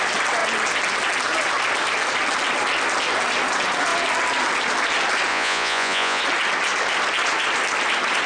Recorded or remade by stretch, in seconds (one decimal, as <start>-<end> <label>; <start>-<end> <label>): 0.0-5.3 recorded; 5.3-6.2 remade; 6.2-8.3 recorded